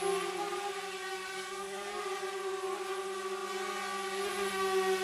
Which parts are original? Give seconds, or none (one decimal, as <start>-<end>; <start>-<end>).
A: 0.0-1.3; 2.0-5.0